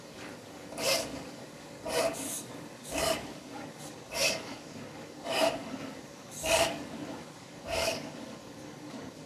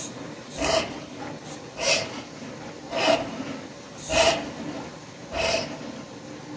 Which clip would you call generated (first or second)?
first